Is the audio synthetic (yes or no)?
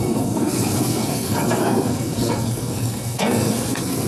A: yes